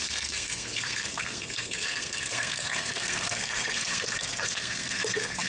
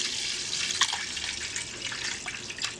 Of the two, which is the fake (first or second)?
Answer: first